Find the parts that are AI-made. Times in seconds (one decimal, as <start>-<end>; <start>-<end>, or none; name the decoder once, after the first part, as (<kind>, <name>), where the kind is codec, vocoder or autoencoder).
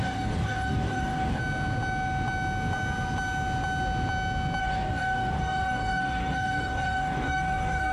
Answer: 0.0-1.4 (codec, DAC); 4.6-7.9